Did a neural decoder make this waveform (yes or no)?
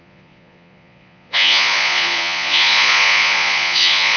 yes